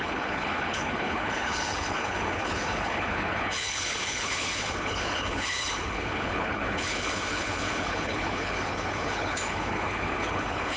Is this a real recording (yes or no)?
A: no